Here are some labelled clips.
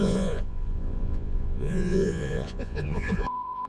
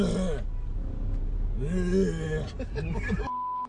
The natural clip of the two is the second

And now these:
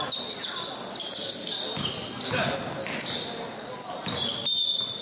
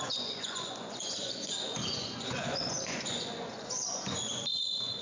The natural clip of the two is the first